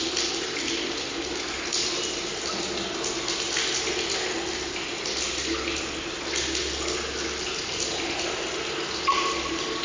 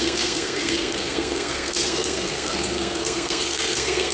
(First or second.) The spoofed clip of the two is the second